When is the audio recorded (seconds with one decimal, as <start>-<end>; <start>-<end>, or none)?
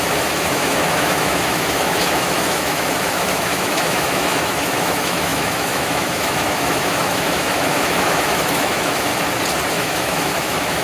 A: 9.1-9.7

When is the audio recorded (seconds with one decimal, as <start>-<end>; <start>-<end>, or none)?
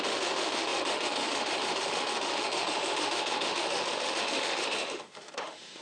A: none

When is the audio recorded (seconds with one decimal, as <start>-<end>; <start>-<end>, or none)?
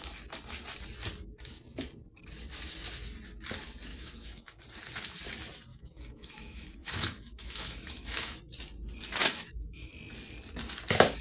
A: 0.0-3.9; 4.6-5.7; 8.4-9.2; 9.9-11.2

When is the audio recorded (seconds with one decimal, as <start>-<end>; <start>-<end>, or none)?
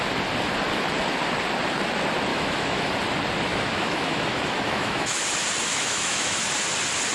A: 0.0-2.3; 2.9-3.5; 5.3-5.7; 6.4-7.1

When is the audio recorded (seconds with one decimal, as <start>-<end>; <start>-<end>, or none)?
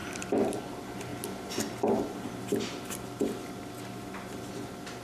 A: 0.0-5.0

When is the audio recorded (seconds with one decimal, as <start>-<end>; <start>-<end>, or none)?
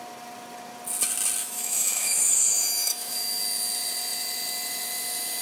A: 0.0-1.4; 3.4-5.4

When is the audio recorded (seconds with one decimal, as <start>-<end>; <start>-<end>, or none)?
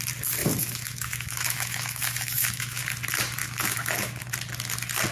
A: 0.0-0.4; 2.8-3.4; 4.2-5.1